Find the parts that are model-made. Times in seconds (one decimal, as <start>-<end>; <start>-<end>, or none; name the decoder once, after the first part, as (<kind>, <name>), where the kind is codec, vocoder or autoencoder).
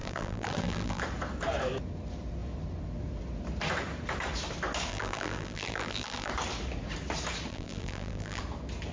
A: 0.0-1.0 (vocoder, BigVGAN v2); 4.9-6.3; 7.5-8.4